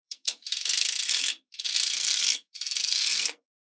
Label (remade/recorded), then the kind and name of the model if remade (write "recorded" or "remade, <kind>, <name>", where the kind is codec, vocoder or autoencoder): remade, codec, SNAC